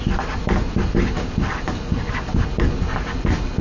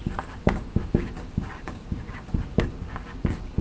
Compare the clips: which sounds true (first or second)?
first